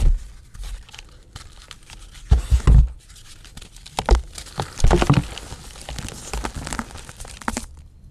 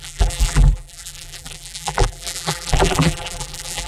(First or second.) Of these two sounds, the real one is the first